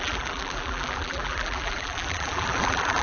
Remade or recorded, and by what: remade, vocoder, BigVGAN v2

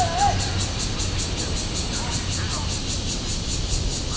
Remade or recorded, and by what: recorded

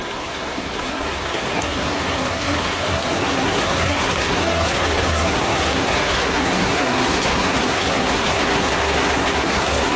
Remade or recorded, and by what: remade, codec, SNAC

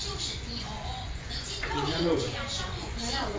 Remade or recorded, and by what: remade, vocoder, Vocos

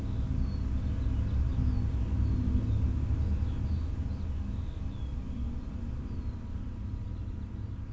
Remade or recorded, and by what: recorded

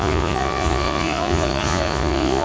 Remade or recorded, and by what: remade, vocoder, Vocos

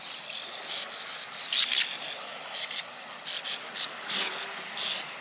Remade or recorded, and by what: recorded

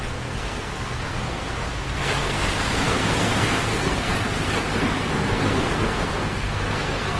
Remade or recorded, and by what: remade, codec, SNAC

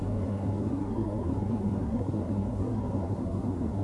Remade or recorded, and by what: remade, codec, SNAC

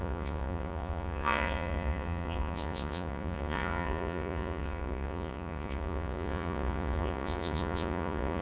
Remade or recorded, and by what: remade, vocoder, Vocos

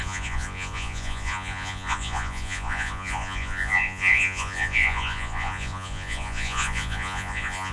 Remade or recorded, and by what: remade, vocoder, Vocos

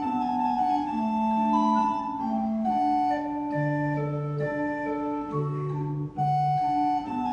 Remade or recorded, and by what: recorded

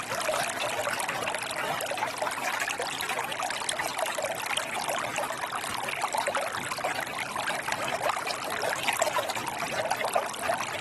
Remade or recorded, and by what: recorded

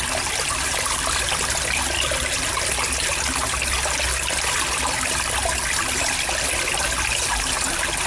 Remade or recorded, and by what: recorded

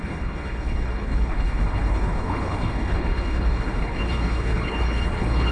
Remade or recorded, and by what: remade, codec, HILCodec